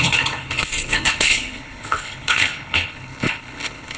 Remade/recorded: remade